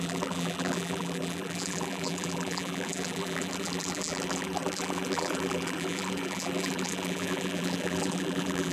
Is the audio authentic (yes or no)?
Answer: no